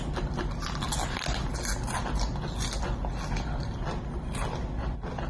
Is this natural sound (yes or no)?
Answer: yes